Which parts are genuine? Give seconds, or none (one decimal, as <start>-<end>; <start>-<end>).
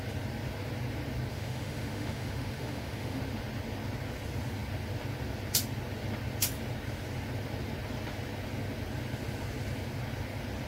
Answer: 0.0-1.3; 3.2-10.7